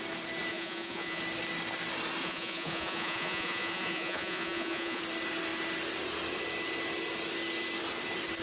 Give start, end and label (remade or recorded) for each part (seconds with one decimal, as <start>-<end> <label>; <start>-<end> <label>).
0.0-0.5 recorded; 0.5-1.2 remade; 1.2-2.2 recorded; 2.2-5.0 remade; 5.0-8.4 recorded